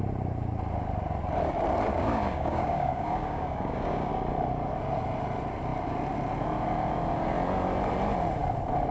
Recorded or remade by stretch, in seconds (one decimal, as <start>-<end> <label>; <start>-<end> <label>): 0.0-1.9 recorded; 1.9-4.1 remade; 4.1-8.9 recorded